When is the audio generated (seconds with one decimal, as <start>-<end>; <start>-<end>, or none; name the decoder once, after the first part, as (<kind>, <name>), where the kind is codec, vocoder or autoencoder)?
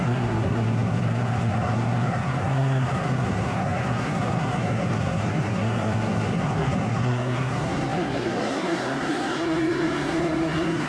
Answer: 0.0-10.9 (codec, SNAC)